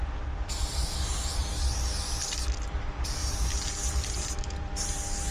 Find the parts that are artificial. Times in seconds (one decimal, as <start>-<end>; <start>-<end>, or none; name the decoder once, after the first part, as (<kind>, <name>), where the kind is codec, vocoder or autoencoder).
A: 0.0-1.4 (vocoder, BigVGAN v2); 2.7-5.3